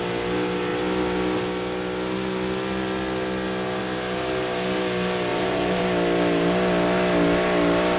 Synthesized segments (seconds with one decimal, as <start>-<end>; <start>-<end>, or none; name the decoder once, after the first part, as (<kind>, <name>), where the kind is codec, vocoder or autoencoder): 5.3-5.8 (vocoder, BigVGAN v2)